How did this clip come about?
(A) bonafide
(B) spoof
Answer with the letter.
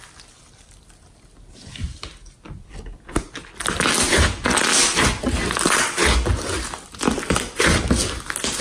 A